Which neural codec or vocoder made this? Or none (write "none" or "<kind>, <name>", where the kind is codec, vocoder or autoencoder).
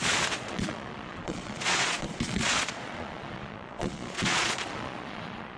vocoder, Vocos